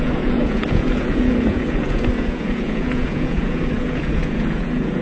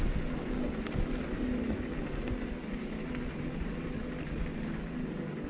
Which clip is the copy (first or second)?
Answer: first